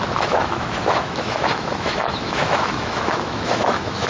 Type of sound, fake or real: fake